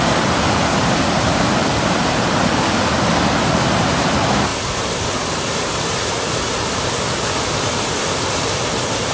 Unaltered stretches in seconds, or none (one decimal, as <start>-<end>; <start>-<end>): 0.0-0.6; 2.5-4.5; 5.7-9.1